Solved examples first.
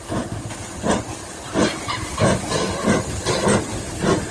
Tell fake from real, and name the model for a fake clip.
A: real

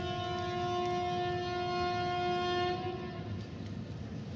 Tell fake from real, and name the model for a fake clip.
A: real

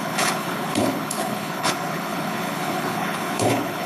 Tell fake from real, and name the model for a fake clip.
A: fake, codec, HILCodec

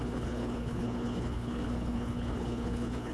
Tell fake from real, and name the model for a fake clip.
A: fake, codec, HILCodec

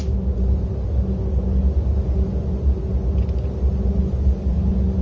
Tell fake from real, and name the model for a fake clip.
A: real